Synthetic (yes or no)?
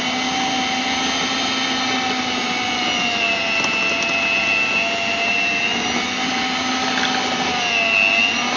no